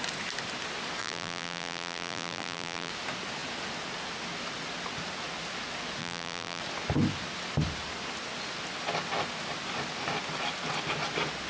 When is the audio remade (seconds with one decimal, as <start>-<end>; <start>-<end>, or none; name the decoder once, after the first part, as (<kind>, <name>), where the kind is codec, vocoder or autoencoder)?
1.0-2.9 (vocoder, BigVGAN v2); 6.0-6.6